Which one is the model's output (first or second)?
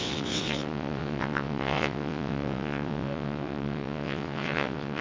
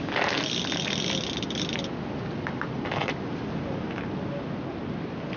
first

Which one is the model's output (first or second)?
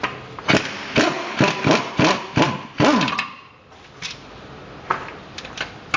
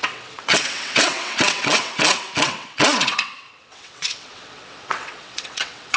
second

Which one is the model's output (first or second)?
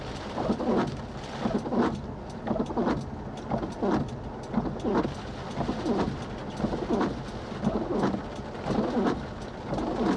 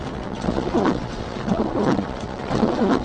second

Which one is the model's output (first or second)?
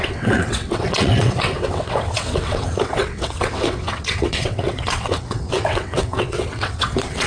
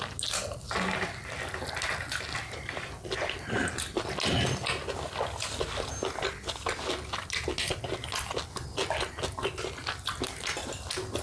first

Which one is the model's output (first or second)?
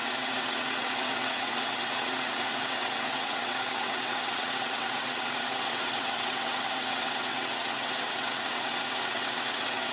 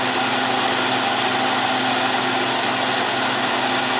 first